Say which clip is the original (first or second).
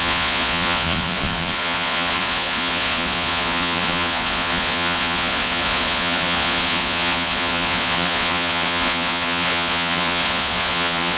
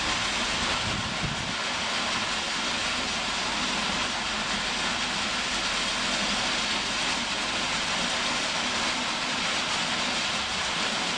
second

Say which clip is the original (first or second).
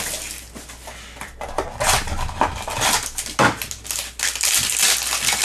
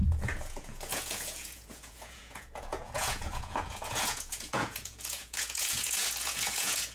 first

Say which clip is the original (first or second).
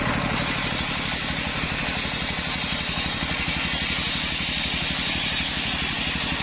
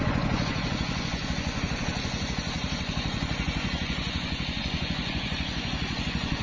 first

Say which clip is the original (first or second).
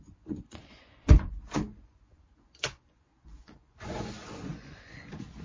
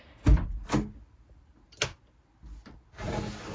second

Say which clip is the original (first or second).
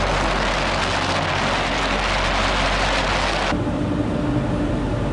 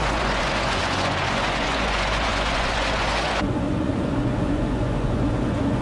first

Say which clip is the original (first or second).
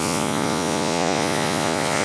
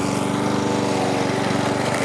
second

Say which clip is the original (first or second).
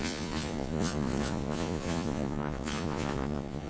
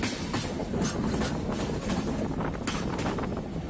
second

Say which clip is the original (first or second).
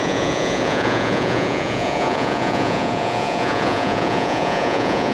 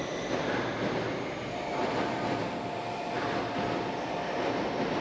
second